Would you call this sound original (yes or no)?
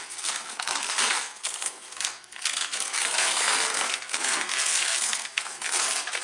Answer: no